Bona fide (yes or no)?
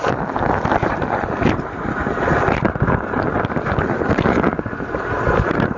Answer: yes